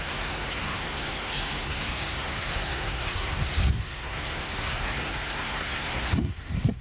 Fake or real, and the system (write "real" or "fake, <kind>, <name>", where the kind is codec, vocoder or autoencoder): fake, codec, SNAC